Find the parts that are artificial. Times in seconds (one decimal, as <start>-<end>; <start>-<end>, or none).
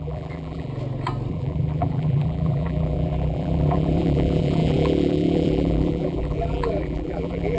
0.0-0.7; 1.3-7.6